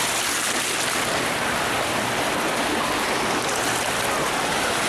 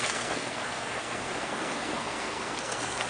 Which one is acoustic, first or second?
first